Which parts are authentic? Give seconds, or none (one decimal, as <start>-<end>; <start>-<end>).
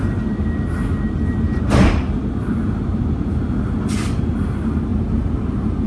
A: 0.0-5.9